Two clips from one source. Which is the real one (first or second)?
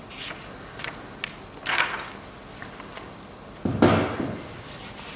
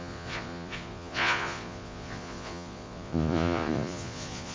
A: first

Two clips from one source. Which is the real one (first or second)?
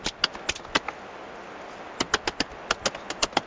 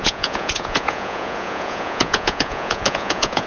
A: first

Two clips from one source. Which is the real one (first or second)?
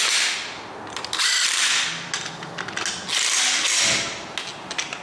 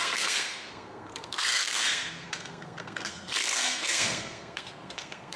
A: first